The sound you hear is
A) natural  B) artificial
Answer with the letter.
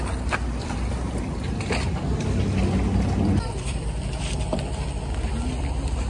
A